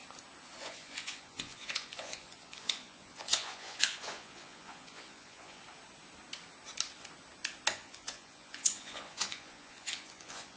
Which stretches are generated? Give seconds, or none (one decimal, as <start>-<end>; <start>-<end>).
0.6-5.6; 7.7-10.6